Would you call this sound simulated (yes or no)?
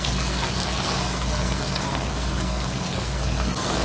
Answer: yes